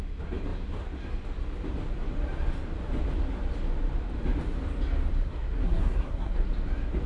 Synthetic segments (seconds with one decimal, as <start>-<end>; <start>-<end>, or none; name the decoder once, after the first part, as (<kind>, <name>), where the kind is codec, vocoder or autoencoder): 5.2-6.5 (codec, SNAC)